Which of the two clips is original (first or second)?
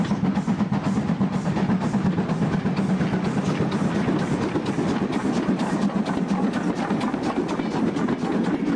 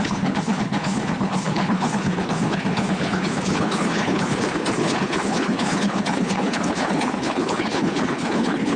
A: first